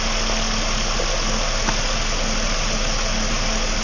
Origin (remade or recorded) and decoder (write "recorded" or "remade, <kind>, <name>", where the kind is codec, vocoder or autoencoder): recorded